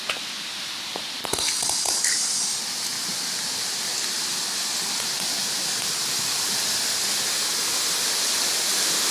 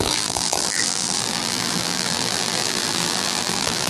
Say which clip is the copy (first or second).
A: second